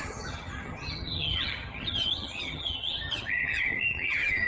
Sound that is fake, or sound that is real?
fake